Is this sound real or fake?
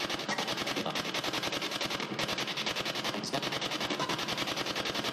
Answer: real